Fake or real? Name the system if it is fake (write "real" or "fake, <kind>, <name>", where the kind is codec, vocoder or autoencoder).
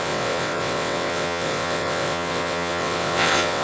fake, vocoder, WaveNeXt